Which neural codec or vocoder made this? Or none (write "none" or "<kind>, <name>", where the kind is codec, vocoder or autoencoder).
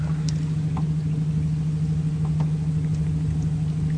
none